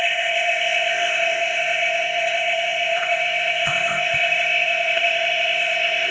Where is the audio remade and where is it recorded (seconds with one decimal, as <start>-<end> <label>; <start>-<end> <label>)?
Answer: 0.0-6.1 remade